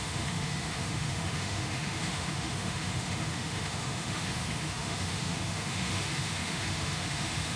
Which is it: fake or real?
fake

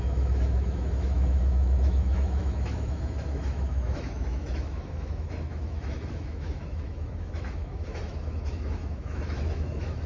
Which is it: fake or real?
fake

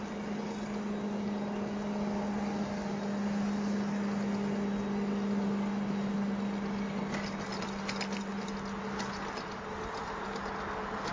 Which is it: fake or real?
real